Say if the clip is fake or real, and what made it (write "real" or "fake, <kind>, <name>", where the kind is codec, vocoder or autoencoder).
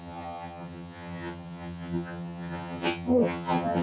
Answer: fake, vocoder, HiFi-GAN